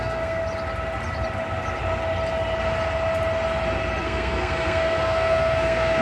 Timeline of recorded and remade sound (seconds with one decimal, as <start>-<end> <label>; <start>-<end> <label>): 0.0-0.4 remade; 0.4-4.0 recorded; 4.0-6.0 remade